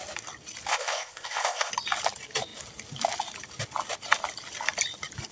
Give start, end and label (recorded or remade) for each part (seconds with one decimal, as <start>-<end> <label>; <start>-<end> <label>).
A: 0.0-0.7 recorded; 0.7-1.7 remade; 1.7-5.3 recorded